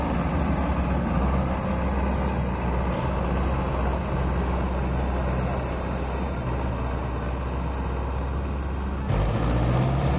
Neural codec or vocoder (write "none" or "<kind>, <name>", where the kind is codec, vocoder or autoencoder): none